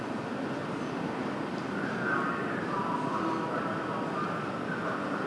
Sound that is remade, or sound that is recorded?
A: recorded